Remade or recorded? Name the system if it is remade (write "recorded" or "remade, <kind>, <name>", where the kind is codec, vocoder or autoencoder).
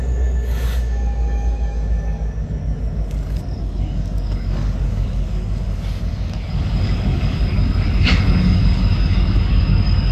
remade, codec, DAC